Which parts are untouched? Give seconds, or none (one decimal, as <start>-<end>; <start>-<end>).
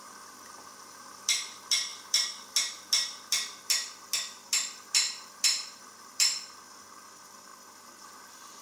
0.0-8.6